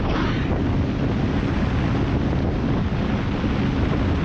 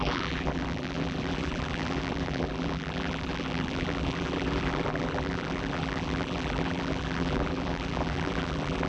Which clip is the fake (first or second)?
second